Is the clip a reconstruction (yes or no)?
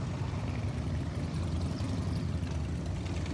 no